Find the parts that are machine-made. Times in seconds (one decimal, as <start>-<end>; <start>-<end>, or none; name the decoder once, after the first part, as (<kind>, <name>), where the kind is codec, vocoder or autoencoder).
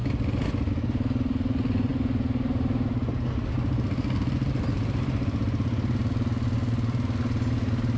none